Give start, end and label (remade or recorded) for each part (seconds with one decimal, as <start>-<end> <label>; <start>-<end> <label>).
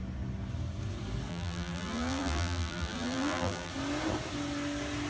0.0-1.3 recorded; 1.3-3.7 remade; 3.7-5.1 recorded